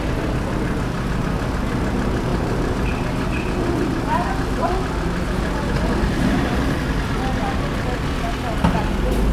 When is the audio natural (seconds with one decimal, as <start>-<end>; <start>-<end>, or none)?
0.0-2.3; 2.9-9.3